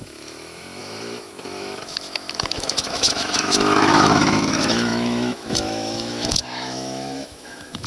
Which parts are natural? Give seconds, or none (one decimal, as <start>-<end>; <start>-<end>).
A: none

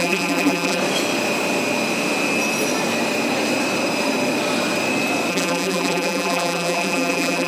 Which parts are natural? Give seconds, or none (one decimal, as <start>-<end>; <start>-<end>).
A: 0.8-5.3

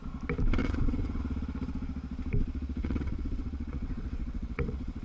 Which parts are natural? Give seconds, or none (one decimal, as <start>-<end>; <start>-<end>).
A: 0.0-0.6; 1.2-2.8